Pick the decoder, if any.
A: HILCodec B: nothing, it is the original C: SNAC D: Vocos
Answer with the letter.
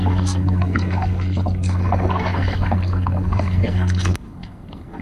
C